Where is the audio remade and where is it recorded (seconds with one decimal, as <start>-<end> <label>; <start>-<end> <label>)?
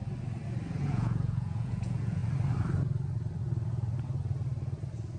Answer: 0.0-0.8 recorded; 0.8-2.2 remade; 2.2-5.2 recorded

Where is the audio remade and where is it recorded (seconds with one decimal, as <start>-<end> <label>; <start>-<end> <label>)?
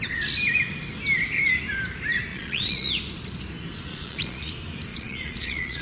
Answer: 0.0-2.3 recorded; 2.3-2.9 remade; 2.9-3.9 recorded; 3.9-4.5 remade; 4.5-4.9 recorded; 4.9-5.8 remade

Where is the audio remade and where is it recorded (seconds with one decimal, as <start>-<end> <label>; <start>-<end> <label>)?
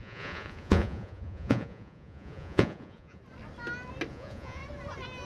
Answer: 0.0-3.2 remade; 3.2-4.1 recorded; 4.1-4.6 remade; 4.6-5.3 recorded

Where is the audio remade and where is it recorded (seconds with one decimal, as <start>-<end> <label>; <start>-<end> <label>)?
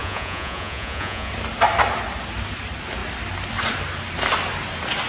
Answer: 0.0-1.3 remade; 1.3-5.1 recorded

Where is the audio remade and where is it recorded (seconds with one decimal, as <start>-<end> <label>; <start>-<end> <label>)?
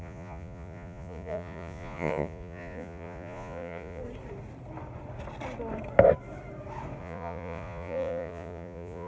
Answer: 0.0-4.0 remade; 4.0-7.0 recorded; 7.0-9.1 remade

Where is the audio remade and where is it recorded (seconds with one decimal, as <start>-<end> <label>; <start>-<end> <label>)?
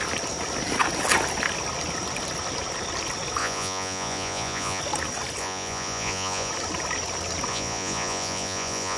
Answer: 0.0-3.4 recorded; 3.4-4.8 remade; 4.8-5.4 recorded; 5.4-6.5 remade; 6.5-7.5 recorded; 7.5-9.0 remade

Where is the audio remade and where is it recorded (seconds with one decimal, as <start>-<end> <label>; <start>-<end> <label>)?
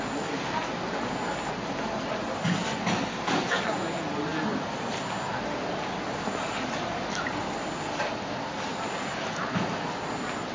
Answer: 0.0-10.5 recorded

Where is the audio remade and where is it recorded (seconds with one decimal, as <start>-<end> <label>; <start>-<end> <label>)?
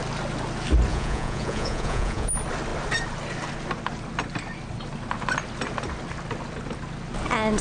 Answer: 0.0-0.9 recorded; 0.9-2.3 remade; 2.3-7.6 recorded